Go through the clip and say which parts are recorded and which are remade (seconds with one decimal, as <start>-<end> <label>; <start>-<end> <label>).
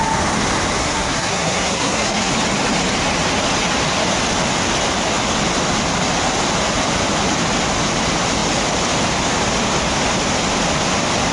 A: 0.0-0.8 recorded; 0.8-2.3 remade; 2.3-11.3 recorded